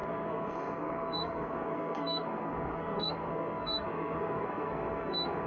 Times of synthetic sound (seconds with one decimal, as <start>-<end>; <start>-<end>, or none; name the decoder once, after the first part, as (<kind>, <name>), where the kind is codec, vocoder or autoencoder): 0.0-5.5 (codec, SNAC)